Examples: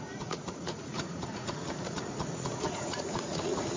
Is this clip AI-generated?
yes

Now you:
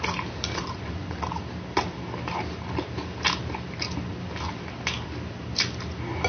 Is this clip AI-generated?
no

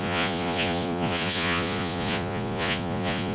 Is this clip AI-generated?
yes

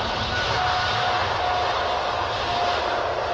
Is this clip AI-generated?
no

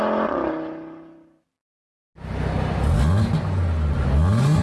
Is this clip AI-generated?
no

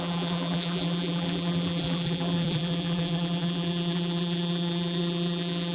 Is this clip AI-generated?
yes